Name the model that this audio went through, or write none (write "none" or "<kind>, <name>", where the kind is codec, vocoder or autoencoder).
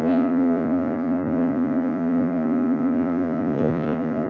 vocoder, Vocos